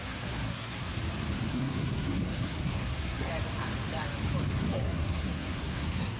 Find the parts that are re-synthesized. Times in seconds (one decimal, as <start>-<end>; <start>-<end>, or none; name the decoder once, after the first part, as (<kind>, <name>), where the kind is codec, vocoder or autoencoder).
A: 0.0-0.9 (codec, SNAC); 1.5-3.3; 4.5-6.2